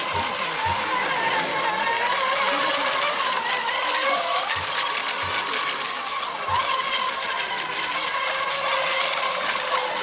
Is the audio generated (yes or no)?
no